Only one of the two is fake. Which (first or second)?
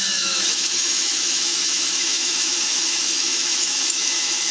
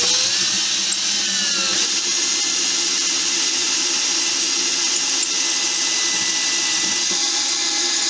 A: first